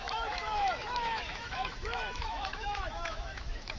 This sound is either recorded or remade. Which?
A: remade